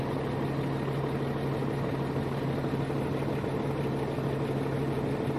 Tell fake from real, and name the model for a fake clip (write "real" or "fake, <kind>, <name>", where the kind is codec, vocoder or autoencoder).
real